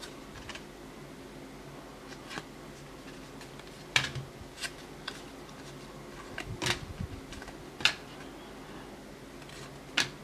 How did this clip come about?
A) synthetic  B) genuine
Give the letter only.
B